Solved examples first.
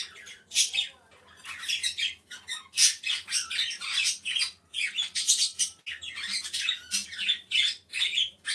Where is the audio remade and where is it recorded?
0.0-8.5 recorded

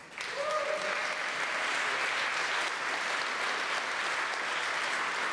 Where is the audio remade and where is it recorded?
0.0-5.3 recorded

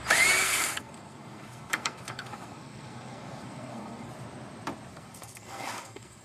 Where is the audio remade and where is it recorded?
0.0-0.4 recorded; 0.4-4.1 remade; 4.1-4.9 recorded; 4.9-6.2 remade

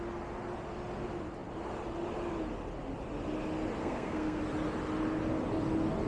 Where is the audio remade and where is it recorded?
0.0-3.8 recorded; 3.8-4.4 remade; 4.4-6.1 recorded

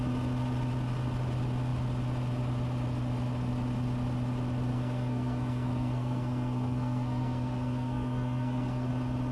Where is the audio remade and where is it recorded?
0.0-4.7 recorded; 4.7-8.9 remade; 8.9-9.3 recorded